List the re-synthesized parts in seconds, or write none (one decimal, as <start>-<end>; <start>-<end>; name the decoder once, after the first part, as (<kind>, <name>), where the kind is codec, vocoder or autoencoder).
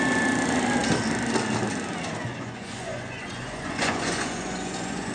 2.3-5.1 (vocoder, Vocos)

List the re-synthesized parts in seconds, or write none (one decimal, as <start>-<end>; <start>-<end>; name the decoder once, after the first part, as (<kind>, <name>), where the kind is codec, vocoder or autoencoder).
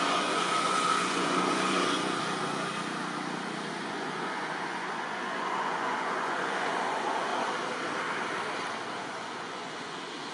0.0-2.7 (vocoder, Vocos); 3.7-7.3; 9.0-10.3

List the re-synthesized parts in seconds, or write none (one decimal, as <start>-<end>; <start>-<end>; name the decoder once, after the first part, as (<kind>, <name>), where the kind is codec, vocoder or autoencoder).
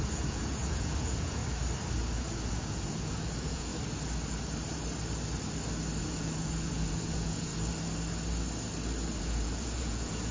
0.0-1.4 (vocoder, Vocos); 2.2-3.7; 6.0-7.5; 9.2-10.3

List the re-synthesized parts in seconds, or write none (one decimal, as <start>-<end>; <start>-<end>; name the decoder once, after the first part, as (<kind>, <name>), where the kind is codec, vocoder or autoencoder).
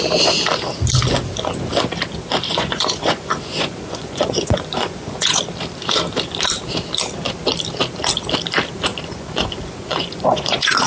2.5-5.4 (vocoder, Vocos); 8.9-10.9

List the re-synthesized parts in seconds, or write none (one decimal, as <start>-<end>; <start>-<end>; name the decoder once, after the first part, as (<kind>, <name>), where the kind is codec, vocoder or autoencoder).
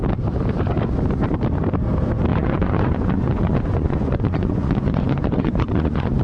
2.3-6.2 (vocoder, Vocos)